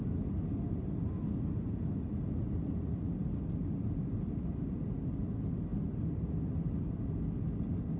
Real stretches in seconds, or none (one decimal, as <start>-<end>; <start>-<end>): 0.0-8.0